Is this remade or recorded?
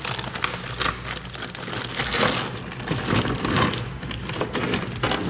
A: recorded